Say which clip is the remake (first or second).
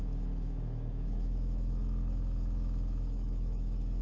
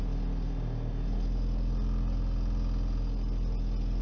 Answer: first